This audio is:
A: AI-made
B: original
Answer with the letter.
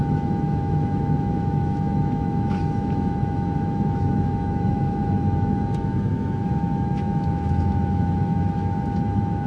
A